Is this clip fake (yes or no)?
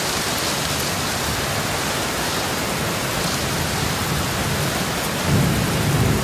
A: no